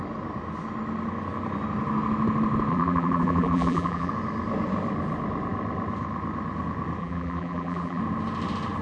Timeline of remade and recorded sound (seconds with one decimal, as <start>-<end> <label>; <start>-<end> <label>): 0.0-2.7 recorded; 2.7-4.1 remade; 4.1-7.0 recorded; 7.0-8.0 remade; 8.0-8.8 recorded